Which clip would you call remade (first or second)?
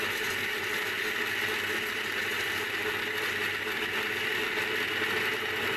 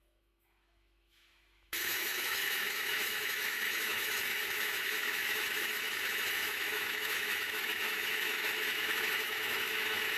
second